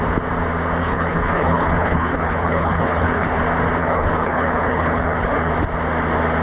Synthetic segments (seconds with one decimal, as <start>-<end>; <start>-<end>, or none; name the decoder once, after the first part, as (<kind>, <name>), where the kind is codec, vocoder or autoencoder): 0.8-3.4 (codec, HILCodec); 3.8-5.5